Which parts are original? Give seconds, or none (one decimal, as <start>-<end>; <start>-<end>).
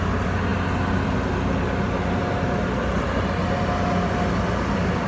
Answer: 0.0-5.1